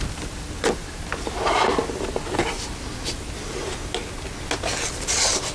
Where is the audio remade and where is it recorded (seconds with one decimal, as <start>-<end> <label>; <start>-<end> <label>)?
0.0-5.5 recorded